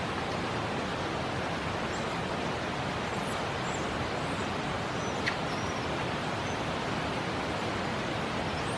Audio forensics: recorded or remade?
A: recorded